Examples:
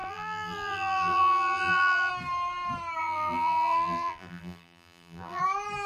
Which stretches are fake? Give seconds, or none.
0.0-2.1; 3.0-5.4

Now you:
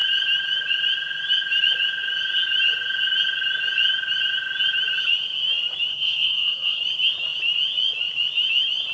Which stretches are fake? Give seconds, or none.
5.9-6.8

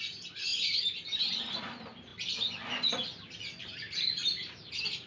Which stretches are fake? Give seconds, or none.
none